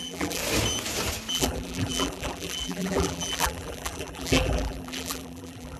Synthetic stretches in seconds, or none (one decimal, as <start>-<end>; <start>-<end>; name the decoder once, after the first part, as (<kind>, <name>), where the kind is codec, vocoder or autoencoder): 0.0-0.4 (vocoder, BigVGAN v2); 1.3-5.8